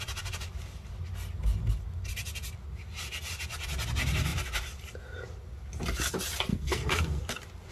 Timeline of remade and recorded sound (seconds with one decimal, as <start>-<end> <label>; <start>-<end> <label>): 0.0-6.5 recorded; 6.5-7.2 remade; 7.2-7.7 recorded